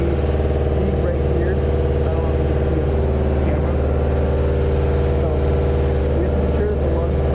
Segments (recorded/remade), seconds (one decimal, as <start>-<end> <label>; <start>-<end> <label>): 0.0-7.3 recorded